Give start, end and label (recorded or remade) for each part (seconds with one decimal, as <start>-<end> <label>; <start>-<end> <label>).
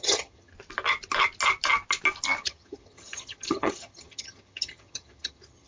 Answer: 0.0-0.5 remade; 0.5-2.4 recorded; 2.4-5.7 remade